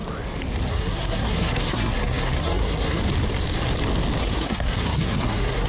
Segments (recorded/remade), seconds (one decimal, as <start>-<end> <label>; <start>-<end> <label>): 0.0-0.7 recorded; 0.7-3.0 remade; 3.0-4.2 recorded; 4.2-5.7 remade